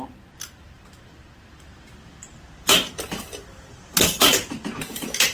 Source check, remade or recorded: remade